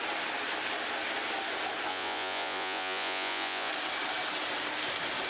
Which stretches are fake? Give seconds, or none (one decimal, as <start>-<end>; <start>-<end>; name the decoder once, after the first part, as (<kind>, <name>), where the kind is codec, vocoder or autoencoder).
1.9-3.7 (vocoder, Vocos)